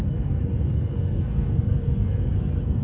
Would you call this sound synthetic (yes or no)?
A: yes